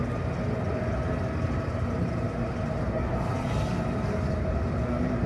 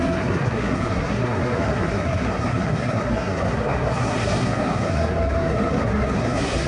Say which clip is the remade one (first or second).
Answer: second